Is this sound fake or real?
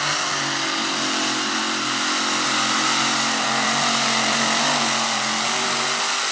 real